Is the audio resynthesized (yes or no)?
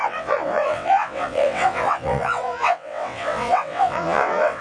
yes